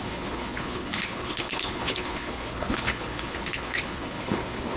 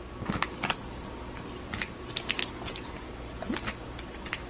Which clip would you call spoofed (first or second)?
first